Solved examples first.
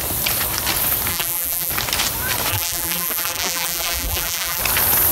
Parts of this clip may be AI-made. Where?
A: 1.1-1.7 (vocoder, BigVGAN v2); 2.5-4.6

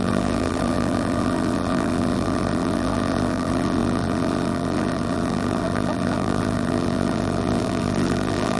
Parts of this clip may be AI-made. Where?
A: 0.0-8.6 (vocoder, BigVGAN v2)